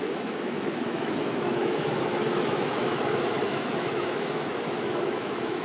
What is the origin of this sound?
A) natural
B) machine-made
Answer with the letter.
B